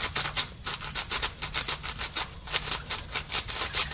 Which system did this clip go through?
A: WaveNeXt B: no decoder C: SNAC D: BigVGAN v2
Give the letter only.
B